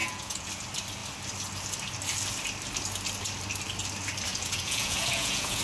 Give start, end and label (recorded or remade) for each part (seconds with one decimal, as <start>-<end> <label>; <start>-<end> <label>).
0.0-0.5 remade; 0.5-4.3 recorded; 4.3-5.6 remade